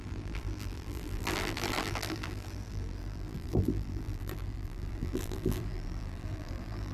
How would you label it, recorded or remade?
remade